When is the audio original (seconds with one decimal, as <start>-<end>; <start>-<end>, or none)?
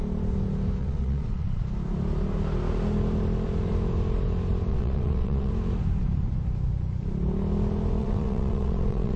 0.0-0.8; 1.6-4.7; 5.5-8.0